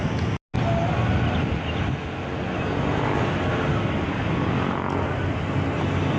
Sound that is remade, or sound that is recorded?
recorded